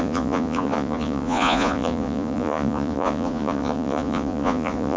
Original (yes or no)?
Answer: no